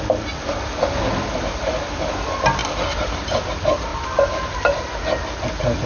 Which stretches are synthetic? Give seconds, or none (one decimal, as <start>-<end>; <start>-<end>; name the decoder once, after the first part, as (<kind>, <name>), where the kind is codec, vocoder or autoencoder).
none